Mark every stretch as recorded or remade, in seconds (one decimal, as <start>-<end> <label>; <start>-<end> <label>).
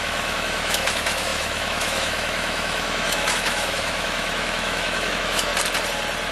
0.0-5.5 remade; 5.5-6.3 recorded